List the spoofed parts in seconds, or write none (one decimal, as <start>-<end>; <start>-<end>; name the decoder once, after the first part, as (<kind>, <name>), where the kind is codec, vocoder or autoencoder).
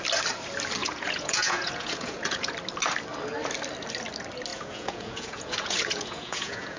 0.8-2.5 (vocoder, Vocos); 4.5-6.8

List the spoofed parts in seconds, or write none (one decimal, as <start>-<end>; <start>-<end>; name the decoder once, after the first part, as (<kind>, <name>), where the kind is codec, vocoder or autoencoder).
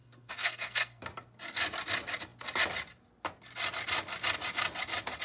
0.0-1.0 (codec, SNAC)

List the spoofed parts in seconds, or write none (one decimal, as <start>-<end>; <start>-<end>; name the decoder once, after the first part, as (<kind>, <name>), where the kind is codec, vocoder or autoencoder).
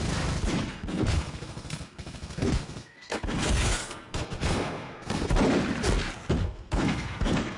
0.7-5.3 (codec, SNAC); 6.4-7.6